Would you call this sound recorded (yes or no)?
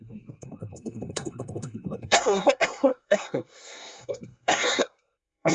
no